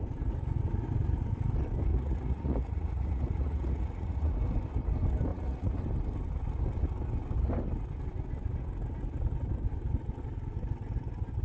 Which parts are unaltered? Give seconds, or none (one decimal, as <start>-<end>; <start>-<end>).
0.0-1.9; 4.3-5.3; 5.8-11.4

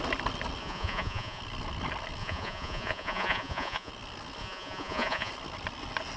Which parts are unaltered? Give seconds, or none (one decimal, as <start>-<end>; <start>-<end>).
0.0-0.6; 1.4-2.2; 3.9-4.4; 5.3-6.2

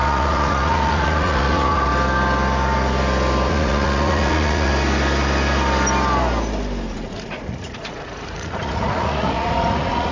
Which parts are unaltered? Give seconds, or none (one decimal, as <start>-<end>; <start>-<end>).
1.9-3.5; 4.7-6.9

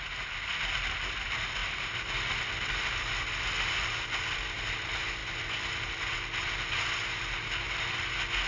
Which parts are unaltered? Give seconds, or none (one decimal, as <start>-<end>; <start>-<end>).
0.0-8.5

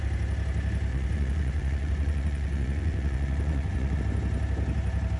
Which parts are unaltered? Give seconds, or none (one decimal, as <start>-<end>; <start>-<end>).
0.0-0.9; 4.0-5.2